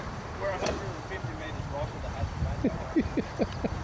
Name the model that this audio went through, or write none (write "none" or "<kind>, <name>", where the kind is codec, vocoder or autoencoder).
vocoder, BigVGAN v2